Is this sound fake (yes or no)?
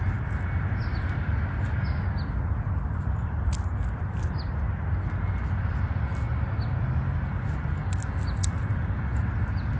no